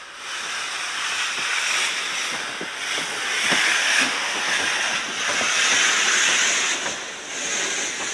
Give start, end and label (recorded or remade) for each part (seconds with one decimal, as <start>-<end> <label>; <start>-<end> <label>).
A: 0.0-3.8 recorded; 3.8-4.4 remade; 4.4-8.1 recorded